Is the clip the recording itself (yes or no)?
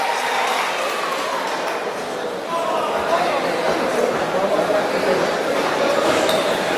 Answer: yes